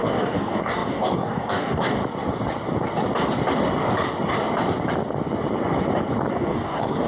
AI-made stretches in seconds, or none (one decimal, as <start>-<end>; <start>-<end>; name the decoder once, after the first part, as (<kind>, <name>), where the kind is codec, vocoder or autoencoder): 0.0-2.0 (codec, DAC); 6.3-7.1